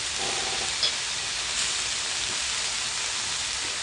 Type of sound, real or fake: real